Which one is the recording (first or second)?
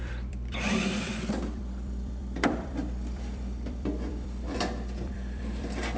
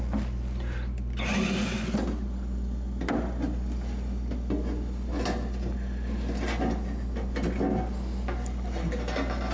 second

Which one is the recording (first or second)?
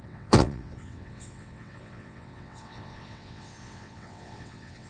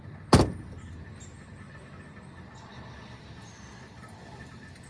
second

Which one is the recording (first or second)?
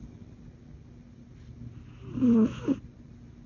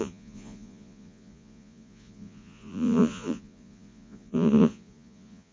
first